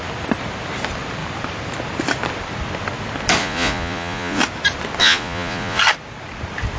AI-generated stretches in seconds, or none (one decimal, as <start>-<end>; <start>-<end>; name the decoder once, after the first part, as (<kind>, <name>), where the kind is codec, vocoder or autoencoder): 3.4-4.4 (vocoder, Vocos); 5.0-5.8

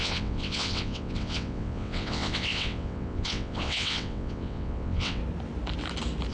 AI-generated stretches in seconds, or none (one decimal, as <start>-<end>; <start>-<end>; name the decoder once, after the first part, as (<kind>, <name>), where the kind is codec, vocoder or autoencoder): 0.0-5.2 (vocoder, WaveNeXt)